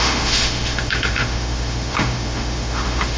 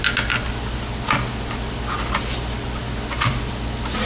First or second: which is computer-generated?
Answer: first